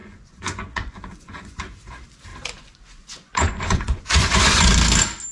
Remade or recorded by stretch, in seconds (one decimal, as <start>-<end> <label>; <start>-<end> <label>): 0.0-1.6 remade; 1.6-2.3 recorded; 2.3-4.7 remade; 4.7-5.3 recorded